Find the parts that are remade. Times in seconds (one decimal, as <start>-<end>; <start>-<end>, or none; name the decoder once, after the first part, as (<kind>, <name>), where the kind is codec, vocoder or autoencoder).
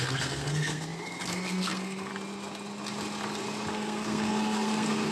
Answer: 0.0-2.1 (codec, SNAC); 3.7-5.1